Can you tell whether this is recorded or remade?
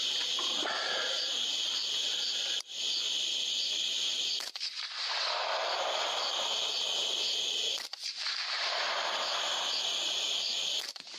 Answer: remade